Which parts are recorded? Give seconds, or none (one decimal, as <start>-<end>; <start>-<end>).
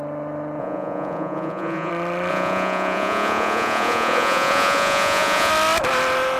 0.0-0.6; 1.9-2.3; 5.5-6.4